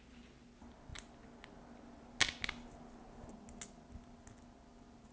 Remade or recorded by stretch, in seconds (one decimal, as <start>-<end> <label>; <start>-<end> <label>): 0.0-5.1 recorded